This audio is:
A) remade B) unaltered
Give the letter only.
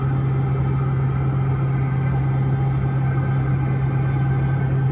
B